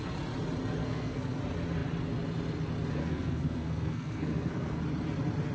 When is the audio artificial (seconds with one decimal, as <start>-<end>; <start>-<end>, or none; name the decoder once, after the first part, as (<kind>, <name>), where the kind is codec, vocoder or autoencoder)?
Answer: 0.8-1.4 (codec, SNAC); 3.0-4.8